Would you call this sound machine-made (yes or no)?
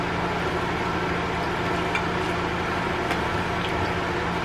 no